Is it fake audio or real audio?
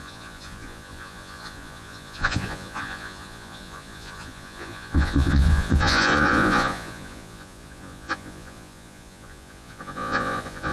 fake